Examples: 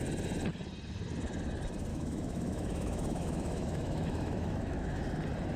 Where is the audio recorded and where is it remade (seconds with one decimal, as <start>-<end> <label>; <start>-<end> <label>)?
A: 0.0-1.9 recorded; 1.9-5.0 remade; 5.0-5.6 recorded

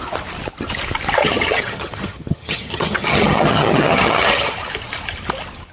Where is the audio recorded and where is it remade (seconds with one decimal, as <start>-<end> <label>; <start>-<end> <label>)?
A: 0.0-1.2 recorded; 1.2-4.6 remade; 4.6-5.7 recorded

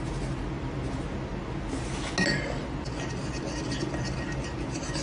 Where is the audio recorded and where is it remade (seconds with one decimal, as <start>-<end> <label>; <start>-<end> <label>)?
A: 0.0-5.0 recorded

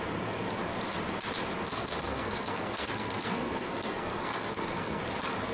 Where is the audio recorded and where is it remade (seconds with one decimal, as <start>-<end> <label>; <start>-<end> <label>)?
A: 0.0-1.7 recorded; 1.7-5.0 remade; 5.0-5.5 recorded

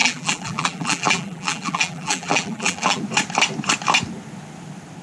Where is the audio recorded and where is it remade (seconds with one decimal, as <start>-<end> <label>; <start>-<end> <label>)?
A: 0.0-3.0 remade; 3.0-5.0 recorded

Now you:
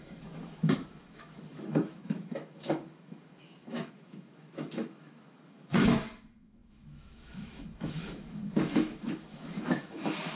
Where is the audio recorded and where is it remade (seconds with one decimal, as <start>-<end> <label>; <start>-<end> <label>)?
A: 0.0-10.4 remade

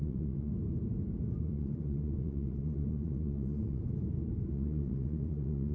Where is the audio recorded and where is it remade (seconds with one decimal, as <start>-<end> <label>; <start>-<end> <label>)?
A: 0.0-0.5 remade; 0.5-1.4 recorded; 1.4-3.8 remade; 3.8-4.5 recorded; 4.5-5.7 remade